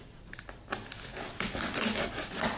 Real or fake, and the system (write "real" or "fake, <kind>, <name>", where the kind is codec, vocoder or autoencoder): real